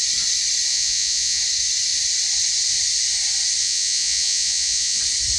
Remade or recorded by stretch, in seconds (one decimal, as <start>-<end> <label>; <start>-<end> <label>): 0.0-0.7 recorded; 0.7-1.4 remade; 1.4-3.6 recorded; 3.6-5.0 remade; 5.0-5.4 recorded